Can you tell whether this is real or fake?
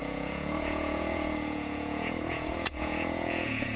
fake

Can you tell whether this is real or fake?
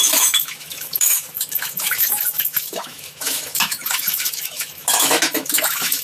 fake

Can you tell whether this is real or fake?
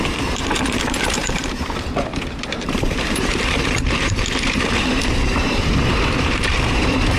fake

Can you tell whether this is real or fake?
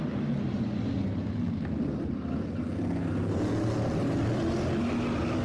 real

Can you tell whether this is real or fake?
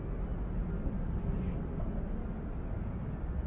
real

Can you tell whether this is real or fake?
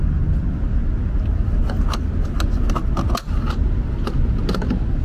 real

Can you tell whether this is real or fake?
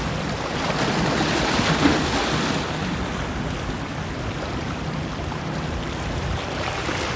real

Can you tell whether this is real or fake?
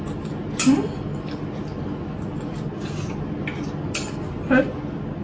real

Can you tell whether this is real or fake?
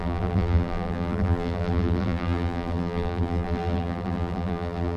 fake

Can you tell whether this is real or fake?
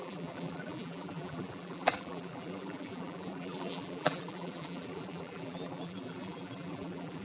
fake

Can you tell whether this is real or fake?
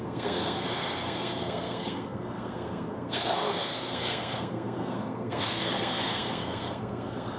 fake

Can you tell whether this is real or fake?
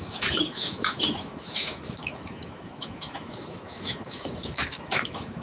fake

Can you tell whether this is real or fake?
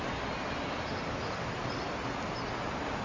real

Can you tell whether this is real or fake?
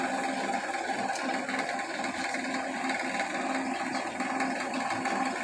real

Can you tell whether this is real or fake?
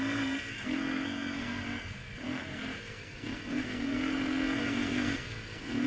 fake